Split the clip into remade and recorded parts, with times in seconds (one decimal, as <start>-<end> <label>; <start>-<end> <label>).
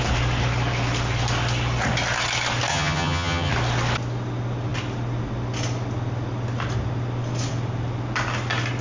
0.0-2.7 recorded; 2.7-3.5 remade; 3.5-8.8 recorded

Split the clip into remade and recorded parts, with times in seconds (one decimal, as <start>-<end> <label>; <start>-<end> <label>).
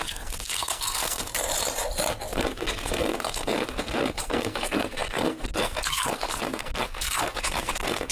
0.0-1.3 remade; 1.3-2.2 recorded; 2.2-8.1 remade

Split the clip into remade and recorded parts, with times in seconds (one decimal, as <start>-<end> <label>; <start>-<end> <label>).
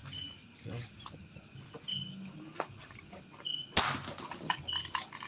0.0-5.3 recorded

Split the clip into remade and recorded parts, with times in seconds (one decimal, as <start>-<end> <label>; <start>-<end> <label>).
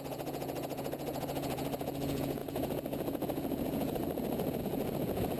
0.0-5.4 remade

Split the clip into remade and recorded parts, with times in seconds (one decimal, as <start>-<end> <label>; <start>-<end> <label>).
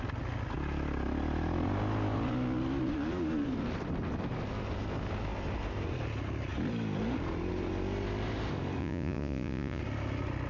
0.0-8.8 recorded; 8.8-9.8 remade; 9.8-10.5 recorded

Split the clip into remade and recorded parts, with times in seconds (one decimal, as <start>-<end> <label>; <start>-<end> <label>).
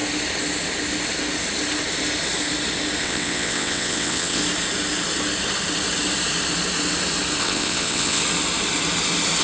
0.0-3.0 recorded; 3.0-4.4 remade; 4.4-7.4 recorded; 7.4-8.2 remade; 8.2-9.4 recorded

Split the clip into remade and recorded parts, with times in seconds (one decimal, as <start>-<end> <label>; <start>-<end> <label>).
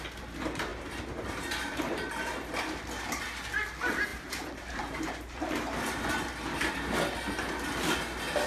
0.0-0.7 recorded; 0.7-2.5 remade; 2.5-4.1 recorded; 4.1-6.0 remade; 6.0-8.5 recorded